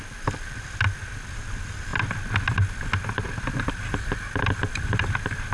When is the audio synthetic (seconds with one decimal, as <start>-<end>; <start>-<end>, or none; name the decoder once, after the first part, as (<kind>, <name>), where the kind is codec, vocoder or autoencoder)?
0.0-1.9 (vocoder, BigVGAN v2); 3.4-5.5